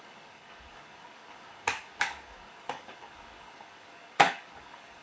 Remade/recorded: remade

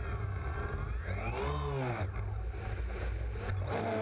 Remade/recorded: recorded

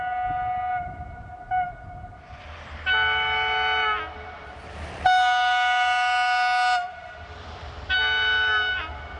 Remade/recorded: recorded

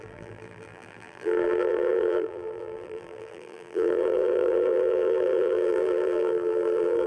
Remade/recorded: remade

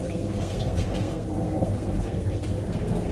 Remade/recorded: remade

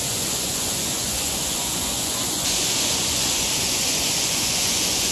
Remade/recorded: remade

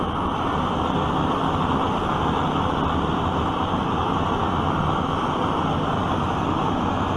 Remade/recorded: recorded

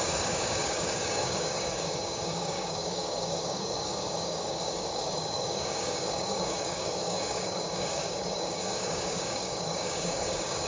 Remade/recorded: remade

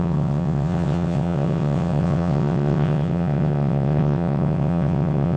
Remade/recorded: remade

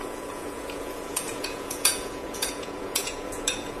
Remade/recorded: remade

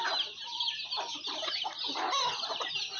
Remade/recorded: recorded